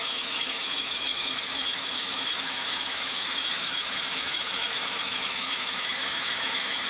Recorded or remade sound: remade